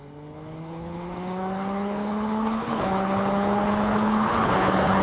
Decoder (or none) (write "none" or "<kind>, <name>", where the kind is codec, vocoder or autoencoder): codec, HILCodec